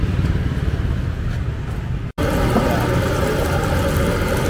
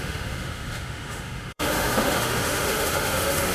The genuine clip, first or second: first